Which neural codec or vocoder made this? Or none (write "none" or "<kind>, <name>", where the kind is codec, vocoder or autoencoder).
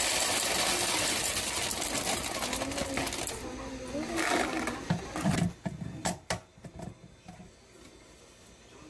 none